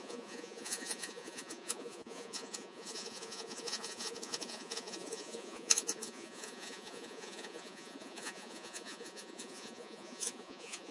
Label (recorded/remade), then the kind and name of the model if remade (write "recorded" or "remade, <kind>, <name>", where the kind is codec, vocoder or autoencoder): remade, vocoder, Vocos